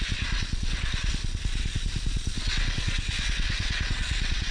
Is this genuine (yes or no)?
no